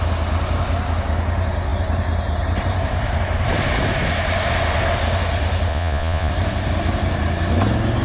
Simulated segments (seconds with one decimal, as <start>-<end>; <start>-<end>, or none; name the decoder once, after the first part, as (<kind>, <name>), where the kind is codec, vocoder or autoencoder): 5.7-6.3 (vocoder, Vocos)